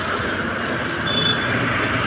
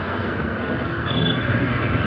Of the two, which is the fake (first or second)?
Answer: second